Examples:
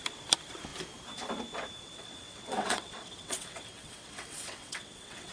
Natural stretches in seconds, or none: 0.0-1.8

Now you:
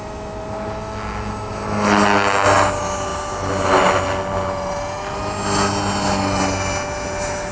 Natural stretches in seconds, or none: 0.0-7.5

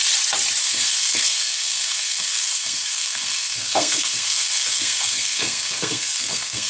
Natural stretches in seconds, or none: 0.0-0.6

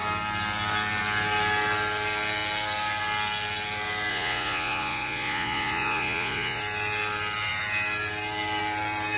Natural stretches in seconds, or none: 0.0-4.1; 6.6-9.2